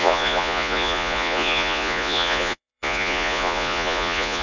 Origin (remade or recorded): remade